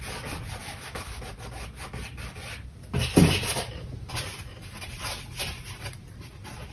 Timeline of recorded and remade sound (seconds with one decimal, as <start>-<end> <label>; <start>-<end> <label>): 0.0-0.6 recorded; 0.6-1.2 remade; 1.2-6.7 recorded